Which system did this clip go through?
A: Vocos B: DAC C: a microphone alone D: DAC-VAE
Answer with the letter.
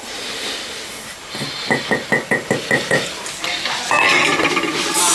C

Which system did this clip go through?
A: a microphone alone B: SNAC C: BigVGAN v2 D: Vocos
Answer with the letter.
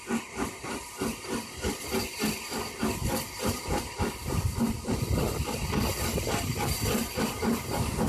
A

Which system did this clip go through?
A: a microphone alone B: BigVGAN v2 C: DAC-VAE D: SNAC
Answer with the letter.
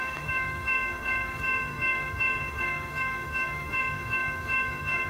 C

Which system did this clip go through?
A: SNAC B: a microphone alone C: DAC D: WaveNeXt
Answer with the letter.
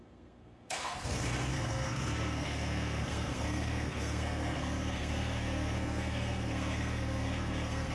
A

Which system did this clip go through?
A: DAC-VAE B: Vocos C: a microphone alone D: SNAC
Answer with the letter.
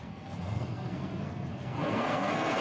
D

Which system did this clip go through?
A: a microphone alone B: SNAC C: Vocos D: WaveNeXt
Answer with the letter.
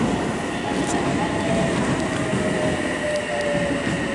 A